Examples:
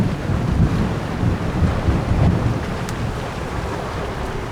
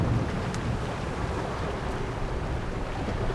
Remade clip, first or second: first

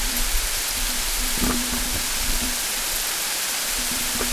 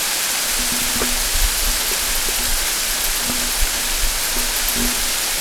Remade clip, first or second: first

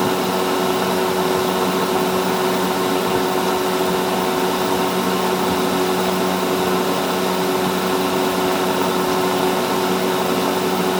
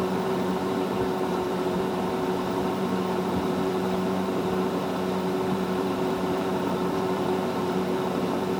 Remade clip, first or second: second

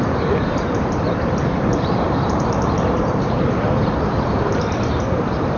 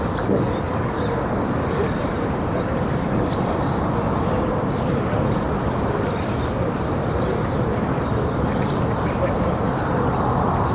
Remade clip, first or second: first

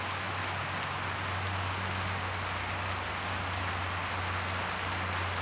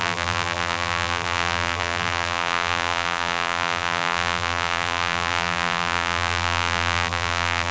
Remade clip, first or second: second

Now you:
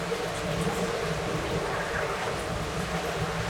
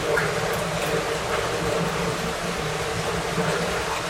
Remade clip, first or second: first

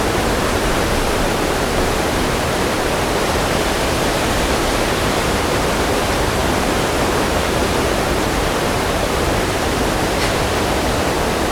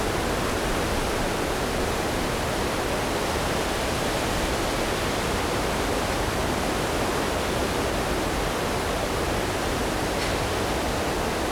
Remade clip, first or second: first